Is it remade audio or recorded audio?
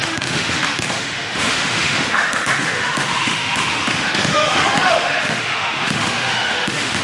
remade